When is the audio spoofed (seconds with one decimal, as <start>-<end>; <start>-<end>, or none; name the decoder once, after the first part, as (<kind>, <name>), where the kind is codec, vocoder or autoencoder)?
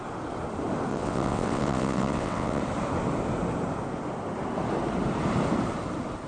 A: 0.9-2.6 (vocoder, WaveNeXt)